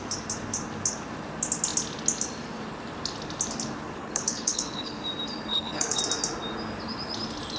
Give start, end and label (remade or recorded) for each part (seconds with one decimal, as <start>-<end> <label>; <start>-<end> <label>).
0.0-4.0 recorded; 4.0-5.0 remade; 5.0-5.5 recorded; 5.5-6.0 remade; 6.0-7.6 recorded